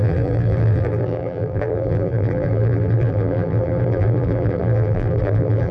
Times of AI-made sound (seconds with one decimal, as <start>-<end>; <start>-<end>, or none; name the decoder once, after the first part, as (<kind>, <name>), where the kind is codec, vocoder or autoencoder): 0.0-5.7 (vocoder, BigVGAN v2)